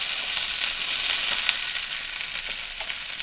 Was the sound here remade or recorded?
recorded